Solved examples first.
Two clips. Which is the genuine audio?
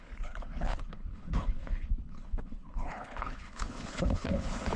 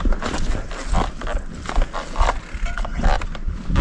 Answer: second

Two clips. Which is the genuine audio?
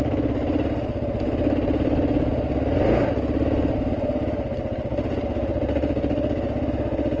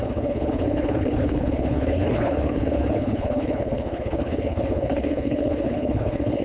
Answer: first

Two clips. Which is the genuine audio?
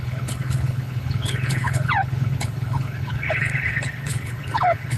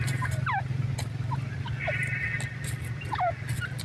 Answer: second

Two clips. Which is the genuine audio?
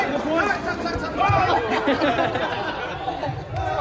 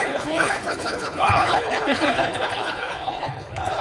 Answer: first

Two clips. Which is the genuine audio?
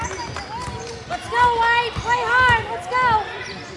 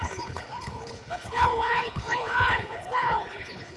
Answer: first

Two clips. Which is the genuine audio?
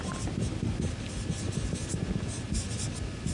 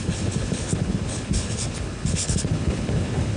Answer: first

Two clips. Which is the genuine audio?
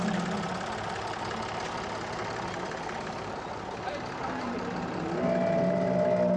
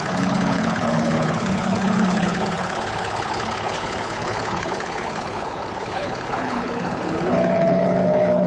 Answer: first